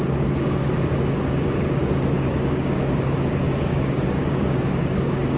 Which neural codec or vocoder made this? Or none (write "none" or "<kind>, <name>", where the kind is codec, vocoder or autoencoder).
codec, DAC